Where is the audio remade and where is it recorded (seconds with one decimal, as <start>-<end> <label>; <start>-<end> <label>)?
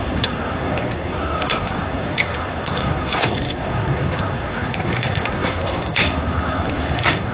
0.0-7.3 remade